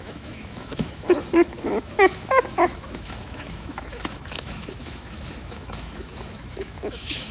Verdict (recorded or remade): remade